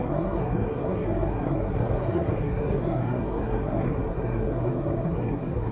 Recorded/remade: remade